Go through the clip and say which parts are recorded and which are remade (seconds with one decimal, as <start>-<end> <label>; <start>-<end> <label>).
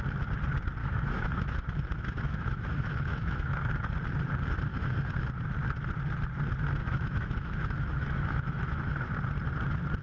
0.0-0.8 recorded; 0.8-3.9 remade; 3.9-4.7 recorded; 4.7-5.3 remade; 5.3-6.8 recorded; 6.8-9.2 remade; 9.2-10.0 recorded